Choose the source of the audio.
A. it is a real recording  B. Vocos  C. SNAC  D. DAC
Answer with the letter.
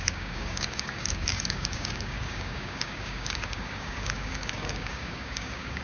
D